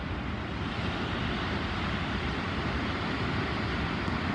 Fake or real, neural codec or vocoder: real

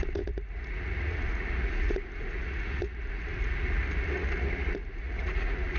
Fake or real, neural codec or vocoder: fake, vocoder, Vocos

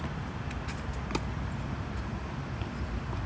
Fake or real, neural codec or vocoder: real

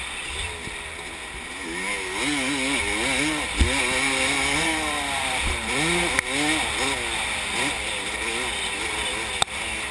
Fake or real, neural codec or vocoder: real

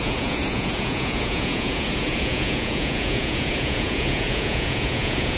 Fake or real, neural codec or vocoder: fake, vocoder, Vocos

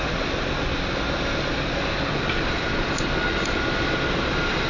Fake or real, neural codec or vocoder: real